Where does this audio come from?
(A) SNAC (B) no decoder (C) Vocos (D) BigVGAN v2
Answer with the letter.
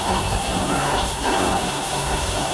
A